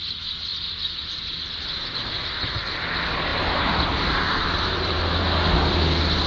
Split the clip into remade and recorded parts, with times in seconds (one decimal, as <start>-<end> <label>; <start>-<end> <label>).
0.0-3.3 recorded; 3.3-5.2 remade; 5.2-6.3 recorded